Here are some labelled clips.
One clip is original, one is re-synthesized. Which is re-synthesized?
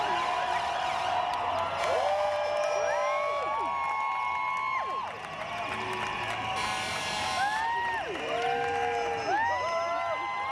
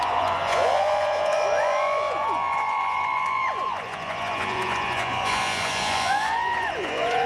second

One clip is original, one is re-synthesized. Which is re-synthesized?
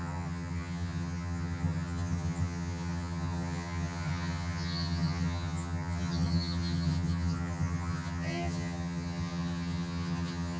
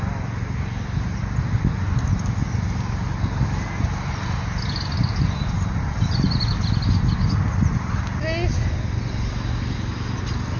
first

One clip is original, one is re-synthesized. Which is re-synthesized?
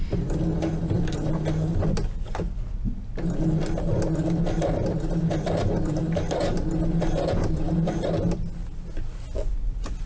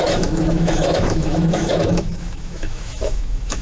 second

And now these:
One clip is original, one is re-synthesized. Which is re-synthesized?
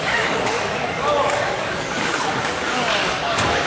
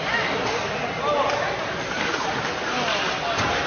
first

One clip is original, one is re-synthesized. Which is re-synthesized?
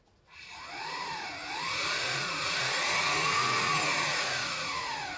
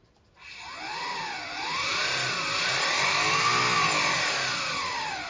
first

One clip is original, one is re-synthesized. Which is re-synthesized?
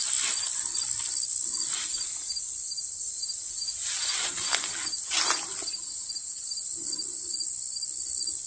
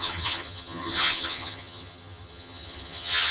second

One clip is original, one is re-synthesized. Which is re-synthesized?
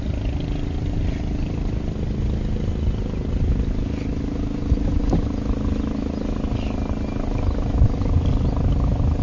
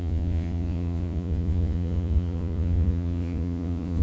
second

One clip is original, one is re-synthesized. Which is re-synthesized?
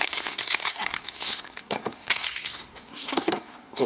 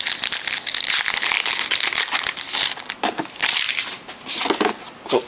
first